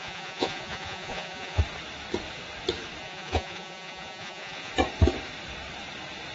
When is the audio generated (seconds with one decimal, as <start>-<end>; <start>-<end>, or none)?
0.0-1.6; 3.0-4.7